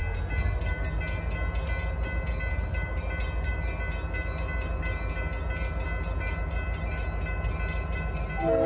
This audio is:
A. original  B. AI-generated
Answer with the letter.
A